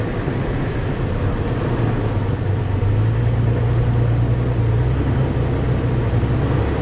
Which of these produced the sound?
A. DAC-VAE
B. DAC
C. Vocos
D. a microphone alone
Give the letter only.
D